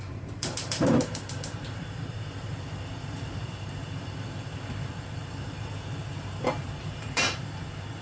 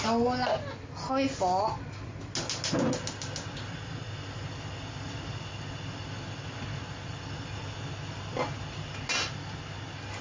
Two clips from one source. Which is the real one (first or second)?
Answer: second